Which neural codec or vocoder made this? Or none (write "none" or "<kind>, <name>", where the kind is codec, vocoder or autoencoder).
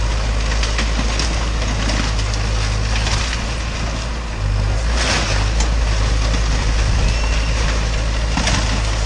none